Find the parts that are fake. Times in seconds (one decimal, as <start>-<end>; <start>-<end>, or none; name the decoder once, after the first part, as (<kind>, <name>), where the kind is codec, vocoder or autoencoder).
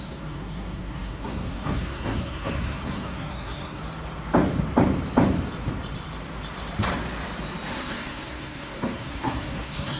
0.0-3.8 (codec, SNAC); 7.7-10.0